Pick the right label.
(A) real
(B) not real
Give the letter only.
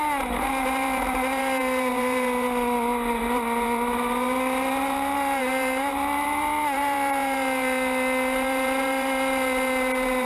B